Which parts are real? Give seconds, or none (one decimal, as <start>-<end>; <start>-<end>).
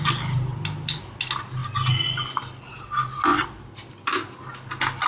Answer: 0.0-5.1